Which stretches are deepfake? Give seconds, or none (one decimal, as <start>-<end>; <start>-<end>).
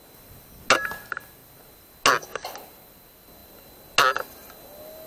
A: none